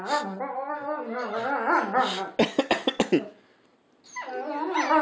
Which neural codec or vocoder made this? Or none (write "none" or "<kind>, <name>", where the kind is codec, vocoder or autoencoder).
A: none